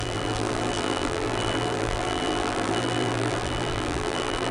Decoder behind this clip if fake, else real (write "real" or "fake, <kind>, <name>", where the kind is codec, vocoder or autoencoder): fake, vocoder, BigVGAN v2